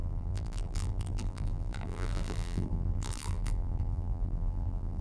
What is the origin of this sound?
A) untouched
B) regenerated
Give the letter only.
B